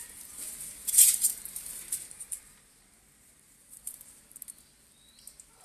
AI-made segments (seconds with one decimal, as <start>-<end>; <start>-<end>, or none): 0.8-4.2